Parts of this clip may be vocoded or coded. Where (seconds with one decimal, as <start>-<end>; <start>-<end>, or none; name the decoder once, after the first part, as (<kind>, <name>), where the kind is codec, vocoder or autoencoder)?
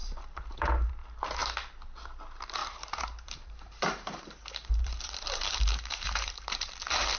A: 0.0-0.9 (vocoder, BigVGAN v2); 2.6-6.7